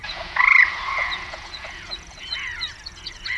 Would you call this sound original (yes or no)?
no